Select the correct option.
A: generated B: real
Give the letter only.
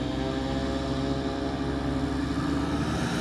B